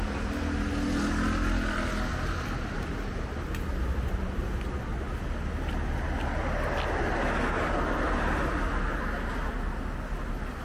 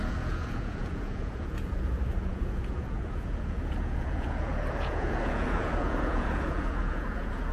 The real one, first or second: first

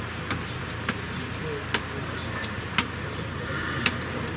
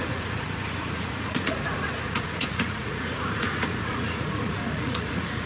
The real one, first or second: first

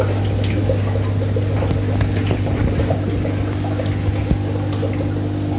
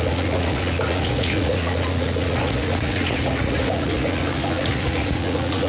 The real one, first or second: first